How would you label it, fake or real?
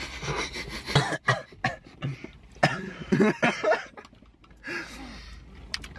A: real